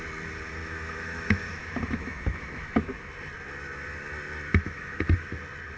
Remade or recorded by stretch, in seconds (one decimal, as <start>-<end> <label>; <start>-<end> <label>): 0.0-0.6 recorded; 0.6-3.1 remade; 3.1-4.5 recorded; 4.5-5.3 remade; 5.3-5.8 recorded